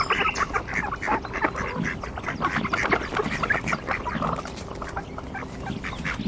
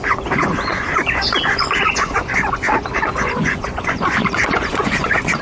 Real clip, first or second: first